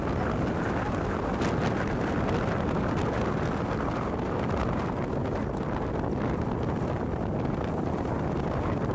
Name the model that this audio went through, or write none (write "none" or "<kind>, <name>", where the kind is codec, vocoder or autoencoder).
none